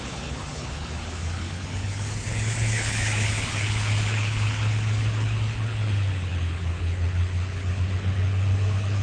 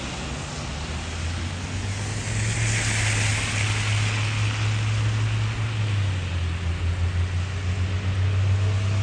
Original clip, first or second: second